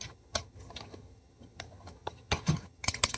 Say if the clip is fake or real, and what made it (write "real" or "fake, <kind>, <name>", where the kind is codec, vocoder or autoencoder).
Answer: fake, vocoder, HiFi-GAN